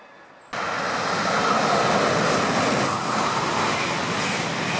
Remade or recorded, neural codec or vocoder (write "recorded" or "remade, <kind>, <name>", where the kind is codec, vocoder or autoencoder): recorded